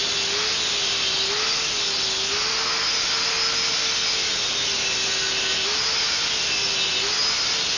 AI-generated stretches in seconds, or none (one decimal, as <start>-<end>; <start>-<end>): none